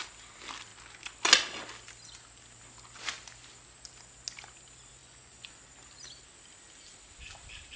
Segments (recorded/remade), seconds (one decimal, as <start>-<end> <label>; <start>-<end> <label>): 0.0-5.0 recorded; 5.0-5.6 remade; 5.6-7.8 recorded